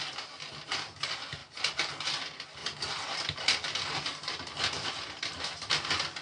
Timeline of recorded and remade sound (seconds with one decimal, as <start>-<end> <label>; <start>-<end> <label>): 0.0-2.6 recorded; 2.6-6.2 remade